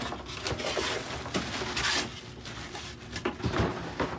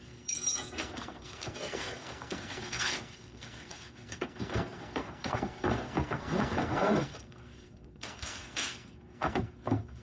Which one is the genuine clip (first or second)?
first